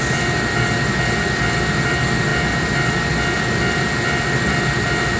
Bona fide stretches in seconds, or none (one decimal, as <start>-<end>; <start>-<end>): 0.0-5.2